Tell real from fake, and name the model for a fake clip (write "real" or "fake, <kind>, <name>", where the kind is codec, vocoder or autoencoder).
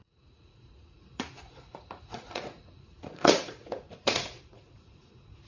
fake, vocoder, Vocos